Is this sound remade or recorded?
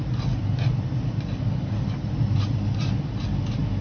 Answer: recorded